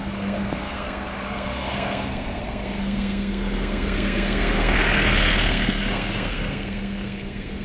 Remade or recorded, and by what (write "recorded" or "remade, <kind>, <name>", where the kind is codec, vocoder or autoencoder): remade, codec, SNAC